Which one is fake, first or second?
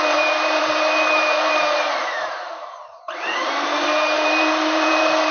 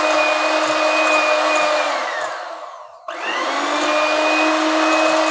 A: first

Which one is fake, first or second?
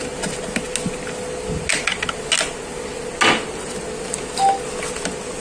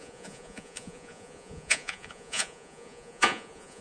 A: second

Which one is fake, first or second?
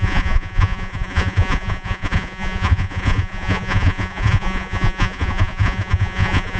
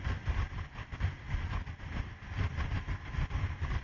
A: first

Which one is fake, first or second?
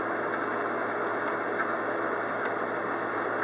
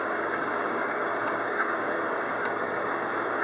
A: second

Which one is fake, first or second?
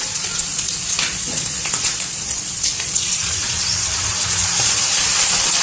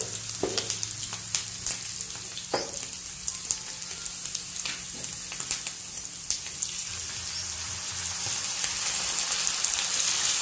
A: first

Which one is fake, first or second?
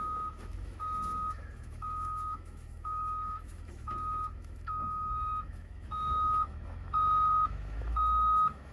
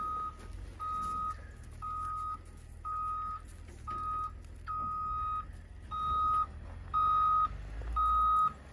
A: first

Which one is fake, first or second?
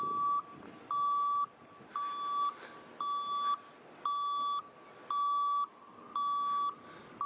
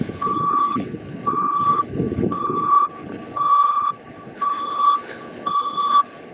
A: second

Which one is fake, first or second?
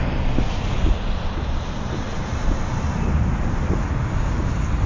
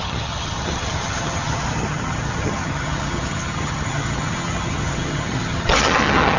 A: second